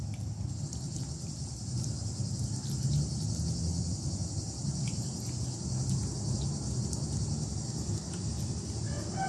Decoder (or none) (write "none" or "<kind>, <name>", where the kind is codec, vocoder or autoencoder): none